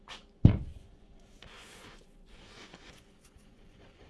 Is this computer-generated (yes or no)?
yes